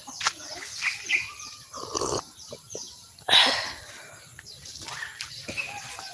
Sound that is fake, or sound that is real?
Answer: real